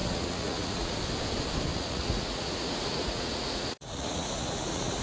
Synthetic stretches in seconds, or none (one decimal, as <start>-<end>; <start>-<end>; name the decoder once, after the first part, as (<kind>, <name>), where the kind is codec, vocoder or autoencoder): 0.0-1.0 (vocoder, Vocos); 1.7-5.0